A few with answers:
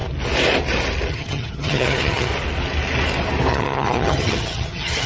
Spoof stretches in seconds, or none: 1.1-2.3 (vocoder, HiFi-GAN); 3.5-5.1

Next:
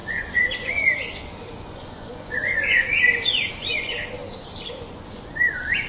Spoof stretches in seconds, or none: 0.0-4.2 (vocoder, Vocos); 4.7-5.9

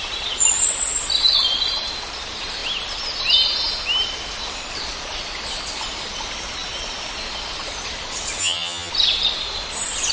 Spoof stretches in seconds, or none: 8.4-8.9 (vocoder, HiFi-GAN)